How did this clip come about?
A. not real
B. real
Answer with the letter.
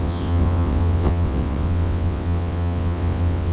A